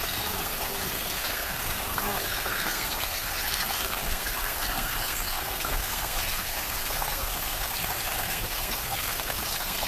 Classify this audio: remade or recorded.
remade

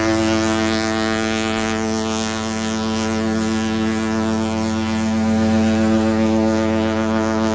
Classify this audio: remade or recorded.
recorded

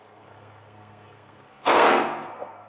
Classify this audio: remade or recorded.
remade